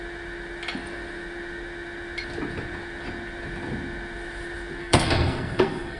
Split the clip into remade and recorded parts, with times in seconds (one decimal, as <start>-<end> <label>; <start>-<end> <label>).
0.0-4.8 recorded; 4.8-6.0 remade